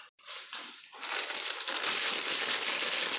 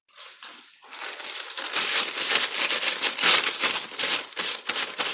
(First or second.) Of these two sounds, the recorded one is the second